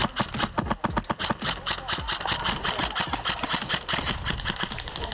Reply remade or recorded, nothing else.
recorded